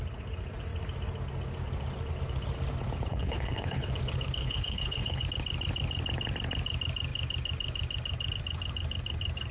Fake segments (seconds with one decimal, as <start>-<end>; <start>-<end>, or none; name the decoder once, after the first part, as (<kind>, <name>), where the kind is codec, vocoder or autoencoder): 3.1-3.9 (codec, HILCodec); 4.4-5.2